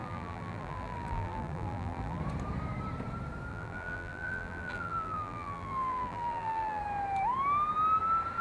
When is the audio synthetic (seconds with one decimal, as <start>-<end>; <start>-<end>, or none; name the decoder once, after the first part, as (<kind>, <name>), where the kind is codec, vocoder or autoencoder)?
0.0-2.2 (vocoder, BigVGAN v2); 3.5-6.8